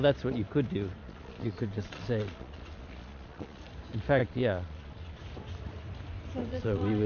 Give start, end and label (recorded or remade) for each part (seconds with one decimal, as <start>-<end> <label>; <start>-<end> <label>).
0.0-1.0 recorded; 1.0-3.6 remade; 3.6-4.2 recorded; 4.2-5.2 remade; 5.2-6.5 recorded; 6.5-7.1 remade